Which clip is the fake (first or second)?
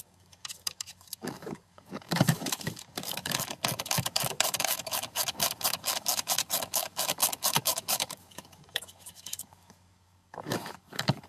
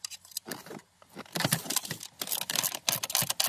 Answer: first